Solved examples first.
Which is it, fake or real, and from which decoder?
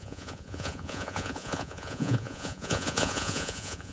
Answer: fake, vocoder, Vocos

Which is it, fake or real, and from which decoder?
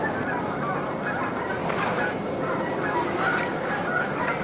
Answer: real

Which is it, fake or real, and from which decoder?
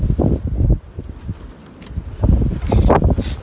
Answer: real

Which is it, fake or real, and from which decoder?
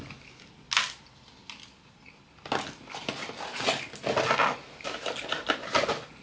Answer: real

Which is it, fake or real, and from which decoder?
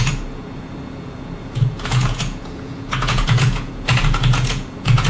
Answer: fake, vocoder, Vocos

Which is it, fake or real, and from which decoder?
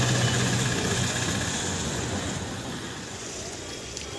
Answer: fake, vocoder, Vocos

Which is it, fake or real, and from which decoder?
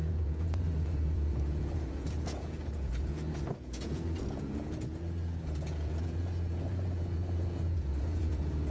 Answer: fake, vocoder, Vocos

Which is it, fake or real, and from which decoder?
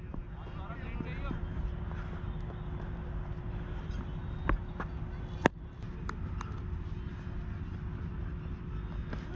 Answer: real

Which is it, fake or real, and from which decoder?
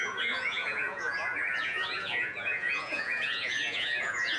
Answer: fake, vocoder, Vocos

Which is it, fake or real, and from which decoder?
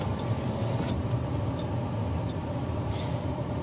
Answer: real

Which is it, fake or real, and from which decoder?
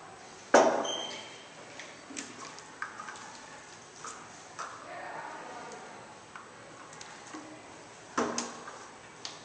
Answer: real